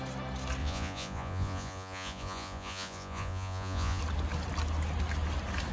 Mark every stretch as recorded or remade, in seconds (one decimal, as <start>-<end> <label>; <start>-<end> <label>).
0.0-0.6 recorded; 0.6-4.0 remade; 4.0-5.7 recorded